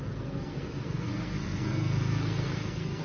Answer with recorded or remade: remade